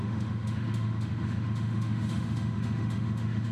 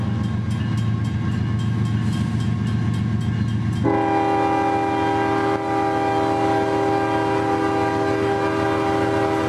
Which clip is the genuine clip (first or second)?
second